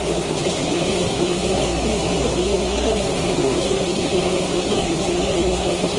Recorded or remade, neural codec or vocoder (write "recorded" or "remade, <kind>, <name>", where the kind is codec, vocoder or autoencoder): remade, codec, SNAC